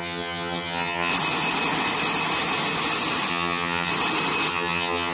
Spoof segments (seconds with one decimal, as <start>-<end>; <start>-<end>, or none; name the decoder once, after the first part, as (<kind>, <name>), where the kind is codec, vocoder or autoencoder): 0.0-1.1 (vocoder, HiFi-GAN); 3.3-3.9; 4.5-5.1